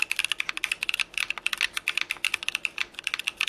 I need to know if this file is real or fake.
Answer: real